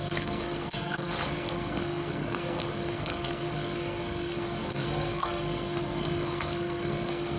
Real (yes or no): no